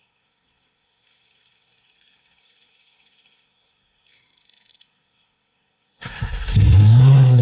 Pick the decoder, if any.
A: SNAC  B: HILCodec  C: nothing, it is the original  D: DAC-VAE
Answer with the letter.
A